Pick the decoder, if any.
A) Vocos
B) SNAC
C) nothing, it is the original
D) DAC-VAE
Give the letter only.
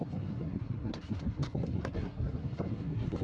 B